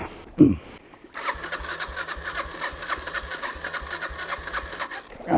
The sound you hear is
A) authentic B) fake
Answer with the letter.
A